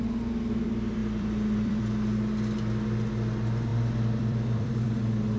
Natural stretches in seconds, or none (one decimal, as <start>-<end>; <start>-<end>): 0.0-1.0; 1.8-3.7; 5.0-5.4